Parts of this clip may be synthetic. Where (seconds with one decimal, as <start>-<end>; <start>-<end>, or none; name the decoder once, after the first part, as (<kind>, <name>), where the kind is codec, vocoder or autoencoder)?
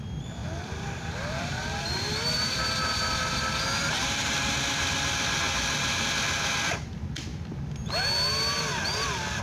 0.4-4.6 (vocoder, BigVGAN v2)